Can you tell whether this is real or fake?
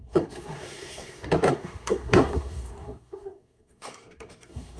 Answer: fake